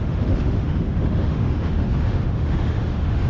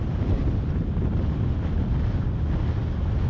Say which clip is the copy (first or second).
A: first